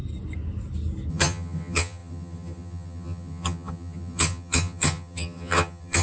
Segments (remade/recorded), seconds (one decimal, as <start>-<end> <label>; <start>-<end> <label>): 0.0-1.1 recorded; 1.1-6.0 remade